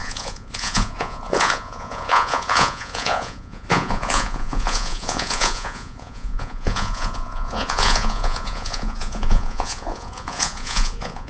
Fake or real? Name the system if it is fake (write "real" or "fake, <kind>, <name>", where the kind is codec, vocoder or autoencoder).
fake, vocoder, Vocos